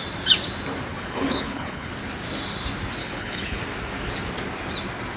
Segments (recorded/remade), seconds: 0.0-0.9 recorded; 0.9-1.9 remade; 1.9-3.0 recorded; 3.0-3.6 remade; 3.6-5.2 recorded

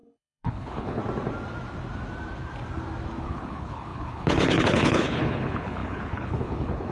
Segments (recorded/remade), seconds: 0.0-1.0 remade; 1.0-3.2 recorded; 3.2-6.9 remade

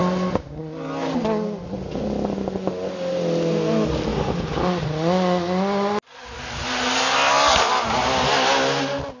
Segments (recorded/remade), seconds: 0.0-9.2 recorded

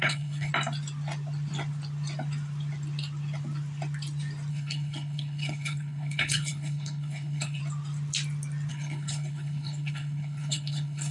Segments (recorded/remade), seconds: 0.0-0.5 remade; 0.5-4.5 recorded; 4.5-7.6 remade; 7.6-8.7 recorded; 8.7-11.1 remade

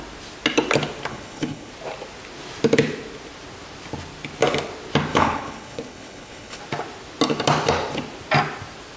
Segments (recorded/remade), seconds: 0.0-1.1 recorded; 1.1-1.7 remade; 1.7-5.1 recorded; 5.1-6.6 remade; 6.6-9.0 recorded

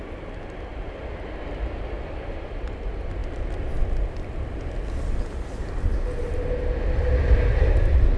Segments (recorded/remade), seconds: 0.0-8.2 recorded

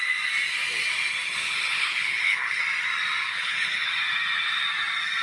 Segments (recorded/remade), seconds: 0.0-1.4 recorded; 1.4-2.6 remade; 2.6-3.3 recorded; 3.3-3.9 remade; 3.9-5.2 recorded

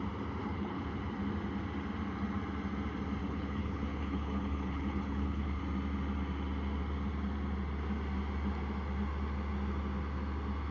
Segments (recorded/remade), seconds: 0.0-0.4 recorded; 0.4-1.0 remade; 1.0-3.2 recorded; 3.2-5.6 remade; 5.6-10.7 recorded